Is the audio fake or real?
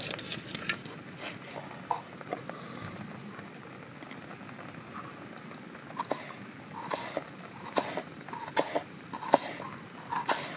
real